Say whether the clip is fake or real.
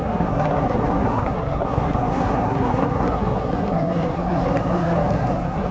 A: fake